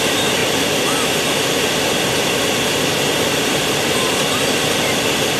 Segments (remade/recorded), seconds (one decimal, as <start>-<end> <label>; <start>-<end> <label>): 0.0-5.4 recorded